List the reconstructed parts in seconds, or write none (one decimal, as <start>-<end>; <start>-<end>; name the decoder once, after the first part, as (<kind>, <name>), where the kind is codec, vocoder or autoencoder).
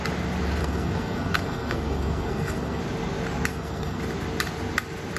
0.6-2.8 (codec, SNAC); 3.5-4.0